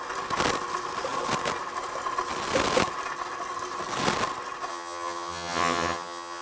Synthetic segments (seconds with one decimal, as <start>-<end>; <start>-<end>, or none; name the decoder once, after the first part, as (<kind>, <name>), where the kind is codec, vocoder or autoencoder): 4.7-6.4 (vocoder, HiFi-GAN)